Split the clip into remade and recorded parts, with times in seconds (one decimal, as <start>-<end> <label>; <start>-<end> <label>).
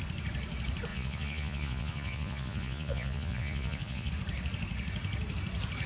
0.0-0.9 recorded; 0.9-4.1 remade; 4.1-5.9 recorded